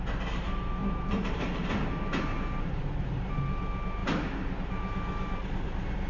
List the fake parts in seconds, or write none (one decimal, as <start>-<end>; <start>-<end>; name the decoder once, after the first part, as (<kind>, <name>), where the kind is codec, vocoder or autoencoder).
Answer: 0.8-1.7 (vocoder, BigVGAN v2); 2.3-2.9